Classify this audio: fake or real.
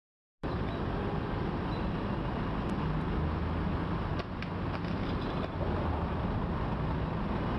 real